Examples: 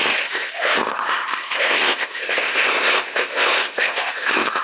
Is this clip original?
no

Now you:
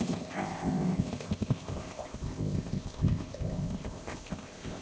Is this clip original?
no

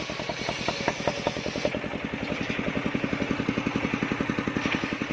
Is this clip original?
yes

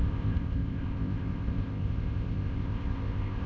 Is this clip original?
no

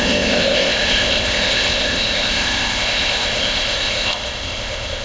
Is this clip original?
no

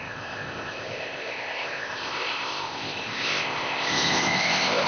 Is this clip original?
no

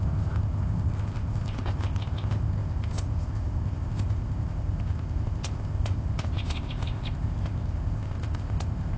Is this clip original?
no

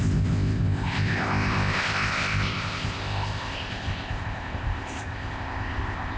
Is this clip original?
no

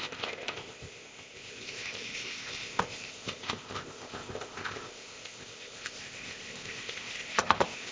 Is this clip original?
no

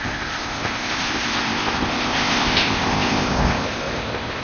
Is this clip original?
no